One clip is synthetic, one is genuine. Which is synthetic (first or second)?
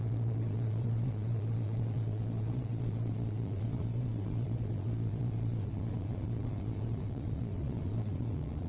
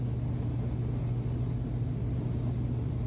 first